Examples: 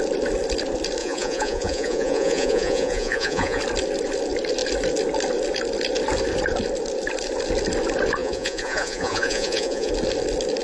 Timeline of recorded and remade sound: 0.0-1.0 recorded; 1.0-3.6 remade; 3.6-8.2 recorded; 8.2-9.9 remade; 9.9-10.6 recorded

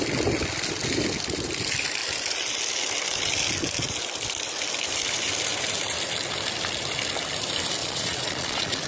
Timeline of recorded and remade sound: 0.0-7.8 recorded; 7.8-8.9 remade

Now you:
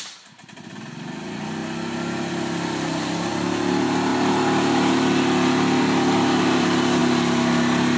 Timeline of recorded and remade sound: 0.0-8.0 recorded